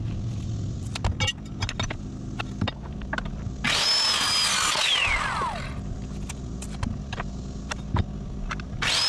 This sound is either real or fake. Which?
real